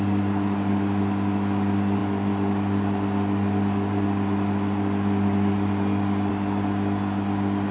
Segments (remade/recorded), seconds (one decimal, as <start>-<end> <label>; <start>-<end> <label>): 0.0-7.7 recorded